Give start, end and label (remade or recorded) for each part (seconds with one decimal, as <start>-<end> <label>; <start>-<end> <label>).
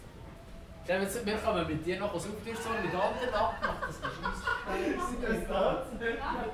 0.0-1.1 remade; 1.1-3.4 recorded; 3.4-6.5 remade